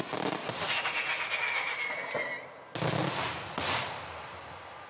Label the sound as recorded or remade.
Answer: recorded